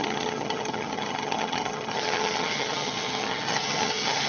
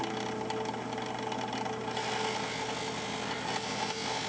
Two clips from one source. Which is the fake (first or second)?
first